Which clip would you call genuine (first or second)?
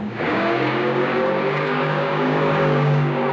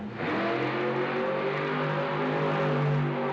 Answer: second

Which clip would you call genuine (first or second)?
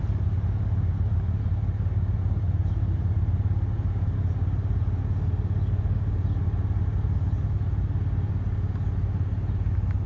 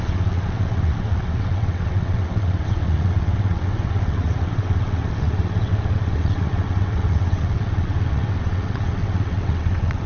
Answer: first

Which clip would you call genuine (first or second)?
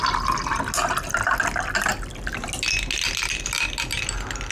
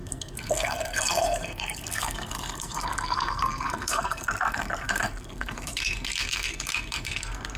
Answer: first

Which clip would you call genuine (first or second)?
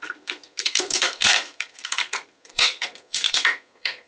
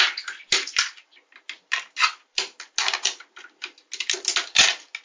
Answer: second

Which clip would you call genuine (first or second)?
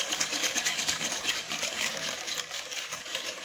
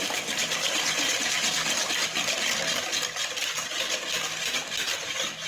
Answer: second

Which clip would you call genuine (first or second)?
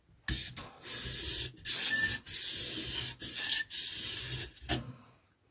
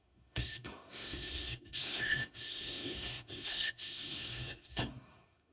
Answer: first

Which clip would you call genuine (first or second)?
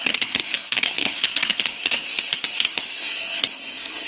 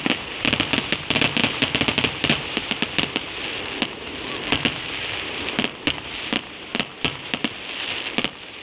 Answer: second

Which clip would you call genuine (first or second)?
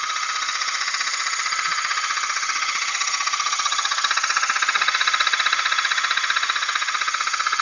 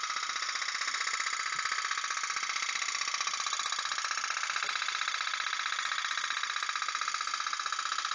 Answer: second